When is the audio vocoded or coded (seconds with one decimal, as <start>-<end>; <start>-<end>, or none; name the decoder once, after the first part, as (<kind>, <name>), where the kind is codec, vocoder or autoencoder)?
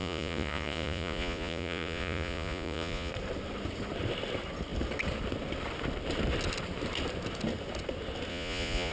0.0-3.1 (vocoder, Vocos); 8.3-8.9